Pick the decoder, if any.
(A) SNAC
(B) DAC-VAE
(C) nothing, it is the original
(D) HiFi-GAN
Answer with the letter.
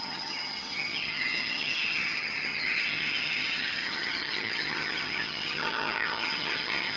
D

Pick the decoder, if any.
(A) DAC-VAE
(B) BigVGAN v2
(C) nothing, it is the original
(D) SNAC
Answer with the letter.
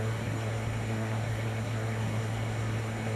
D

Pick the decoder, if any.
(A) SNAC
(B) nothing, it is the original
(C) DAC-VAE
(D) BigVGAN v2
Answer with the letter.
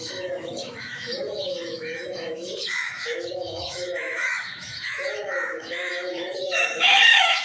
C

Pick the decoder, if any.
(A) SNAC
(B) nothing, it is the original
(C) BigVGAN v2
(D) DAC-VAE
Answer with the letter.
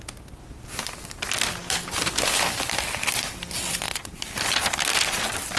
B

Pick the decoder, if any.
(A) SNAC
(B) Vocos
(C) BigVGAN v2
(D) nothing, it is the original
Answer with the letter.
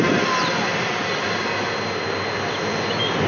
D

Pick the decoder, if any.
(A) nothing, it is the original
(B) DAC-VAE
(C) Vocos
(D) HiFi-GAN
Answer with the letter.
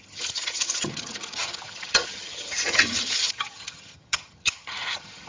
D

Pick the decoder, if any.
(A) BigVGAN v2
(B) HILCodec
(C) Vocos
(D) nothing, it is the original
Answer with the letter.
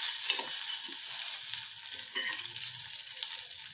D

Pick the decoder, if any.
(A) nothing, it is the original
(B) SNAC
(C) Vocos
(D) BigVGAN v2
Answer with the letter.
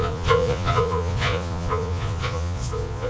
C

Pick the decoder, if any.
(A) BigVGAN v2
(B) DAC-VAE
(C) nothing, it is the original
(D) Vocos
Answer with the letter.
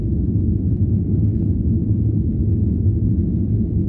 B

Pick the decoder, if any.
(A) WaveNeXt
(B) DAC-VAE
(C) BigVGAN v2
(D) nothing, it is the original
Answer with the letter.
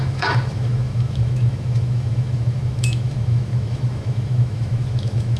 B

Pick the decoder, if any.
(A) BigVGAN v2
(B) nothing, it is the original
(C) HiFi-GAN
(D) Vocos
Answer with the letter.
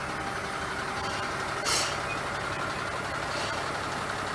B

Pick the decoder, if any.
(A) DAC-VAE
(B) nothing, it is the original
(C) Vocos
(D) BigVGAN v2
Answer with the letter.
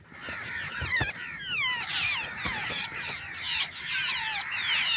D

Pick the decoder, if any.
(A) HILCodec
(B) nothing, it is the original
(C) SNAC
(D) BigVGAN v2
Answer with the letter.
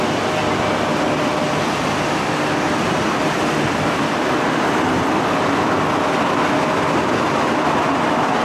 B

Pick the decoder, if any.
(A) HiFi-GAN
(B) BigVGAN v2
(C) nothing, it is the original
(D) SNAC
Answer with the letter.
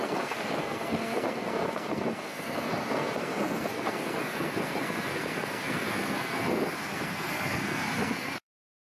D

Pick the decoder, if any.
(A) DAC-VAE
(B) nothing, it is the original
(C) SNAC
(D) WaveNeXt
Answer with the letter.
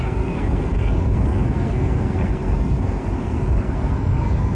C